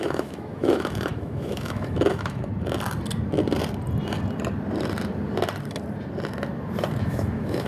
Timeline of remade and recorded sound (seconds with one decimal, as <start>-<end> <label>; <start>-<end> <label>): 0.0-2.5 remade; 2.5-7.0 recorded; 7.0-7.7 remade